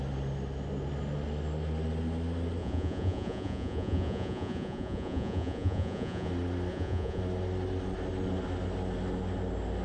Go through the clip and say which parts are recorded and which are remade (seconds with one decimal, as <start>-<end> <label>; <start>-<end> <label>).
0.0-2.6 recorded; 2.6-6.3 remade; 6.3-6.7 recorded; 6.7-7.2 remade; 7.2-9.8 recorded